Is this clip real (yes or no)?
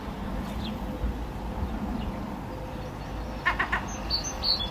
yes